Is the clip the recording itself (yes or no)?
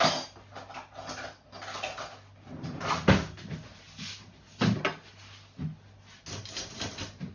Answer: yes